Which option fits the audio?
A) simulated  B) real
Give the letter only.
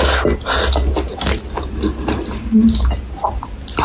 B